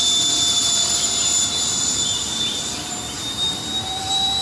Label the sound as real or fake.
fake